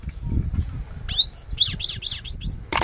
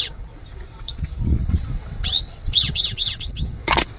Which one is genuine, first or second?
first